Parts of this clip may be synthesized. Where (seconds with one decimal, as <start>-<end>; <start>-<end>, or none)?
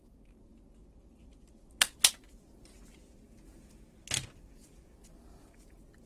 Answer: none